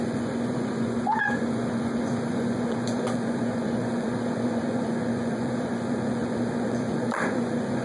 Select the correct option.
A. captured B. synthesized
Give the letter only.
B